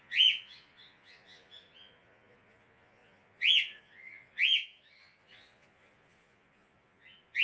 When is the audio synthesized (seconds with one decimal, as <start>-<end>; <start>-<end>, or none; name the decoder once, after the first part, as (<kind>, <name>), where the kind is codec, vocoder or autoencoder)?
0.0-7.4 (vocoder, Vocos)